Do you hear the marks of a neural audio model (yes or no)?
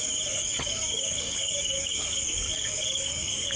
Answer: yes